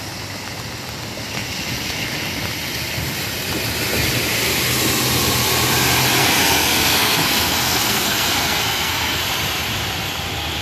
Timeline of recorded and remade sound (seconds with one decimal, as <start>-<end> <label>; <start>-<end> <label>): 0.0-6.2 recorded; 6.2-9.2 remade; 9.2-10.6 recorded